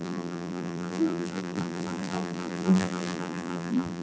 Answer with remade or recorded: remade